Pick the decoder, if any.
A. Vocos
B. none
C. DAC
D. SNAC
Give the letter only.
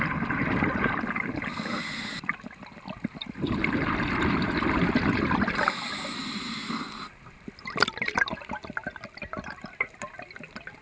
B